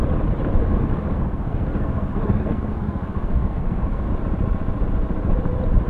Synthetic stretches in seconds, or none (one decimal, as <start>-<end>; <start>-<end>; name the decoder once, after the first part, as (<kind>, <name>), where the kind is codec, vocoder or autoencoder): 0.6-4.1 (codec, SNAC)